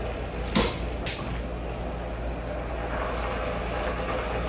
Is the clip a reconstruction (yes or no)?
no